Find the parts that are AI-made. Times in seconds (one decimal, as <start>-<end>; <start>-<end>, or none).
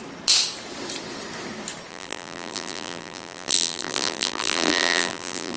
1.9-5.6